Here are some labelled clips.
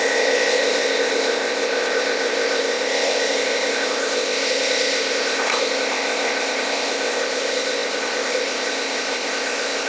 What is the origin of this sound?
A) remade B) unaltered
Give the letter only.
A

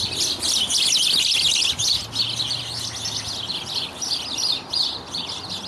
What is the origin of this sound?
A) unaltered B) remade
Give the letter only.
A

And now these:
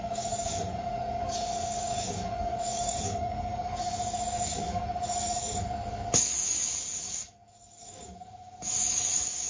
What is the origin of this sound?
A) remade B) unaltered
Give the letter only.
A